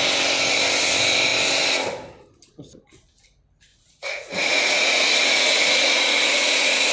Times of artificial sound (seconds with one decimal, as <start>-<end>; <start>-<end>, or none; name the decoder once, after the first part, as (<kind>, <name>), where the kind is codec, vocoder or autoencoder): 3.7-6.9 (vocoder, Vocos)